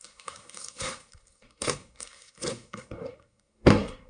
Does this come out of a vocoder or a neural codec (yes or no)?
yes